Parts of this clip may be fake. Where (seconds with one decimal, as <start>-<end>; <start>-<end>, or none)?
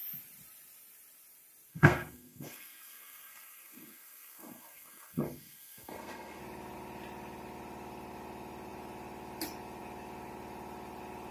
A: 1.7-6.4